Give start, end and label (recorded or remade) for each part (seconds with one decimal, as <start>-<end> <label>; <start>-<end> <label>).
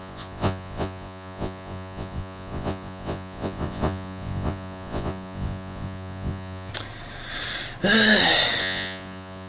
0.0-6.7 remade; 6.7-8.6 recorded; 8.6-9.5 remade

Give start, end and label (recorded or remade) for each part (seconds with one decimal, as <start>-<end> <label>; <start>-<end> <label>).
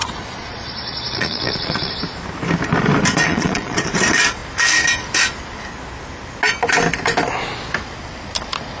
0.0-1.9 remade; 1.9-3.2 recorded; 3.2-3.9 remade; 3.9-8.8 recorded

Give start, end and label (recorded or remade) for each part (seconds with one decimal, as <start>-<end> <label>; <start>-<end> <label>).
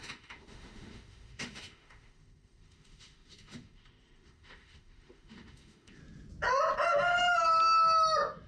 0.0-6.0 remade; 6.0-8.5 recorded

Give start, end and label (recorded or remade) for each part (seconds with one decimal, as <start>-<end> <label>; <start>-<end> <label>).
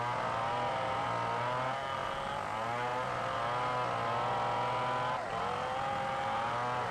0.0-6.9 recorded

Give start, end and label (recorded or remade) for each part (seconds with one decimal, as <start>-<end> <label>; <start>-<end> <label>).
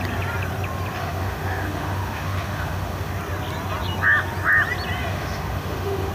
0.0-1.0 recorded; 1.0-3.1 remade; 3.1-5.1 recorded; 5.1-6.1 remade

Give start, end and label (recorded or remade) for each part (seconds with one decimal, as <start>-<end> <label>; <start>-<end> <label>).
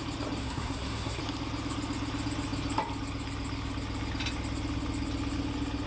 0.0-0.4 recorded; 0.4-1.2 remade; 1.2-5.9 recorded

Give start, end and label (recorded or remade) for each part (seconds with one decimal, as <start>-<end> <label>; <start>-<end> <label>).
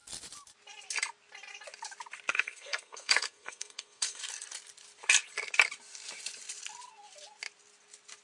0.0-2.3 recorded; 2.3-4.2 remade; 4.2-8.2 recorded